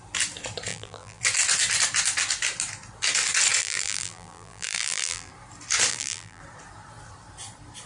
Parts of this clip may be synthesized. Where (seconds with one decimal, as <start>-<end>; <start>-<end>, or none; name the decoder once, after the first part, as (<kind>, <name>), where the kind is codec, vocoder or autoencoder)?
0.7-1.2 (vocoder, BigVGAN v2); 3.6-5.3; 5.9-6.4